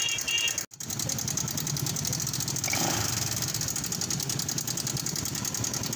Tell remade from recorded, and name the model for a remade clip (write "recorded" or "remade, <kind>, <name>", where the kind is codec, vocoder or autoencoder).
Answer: recorded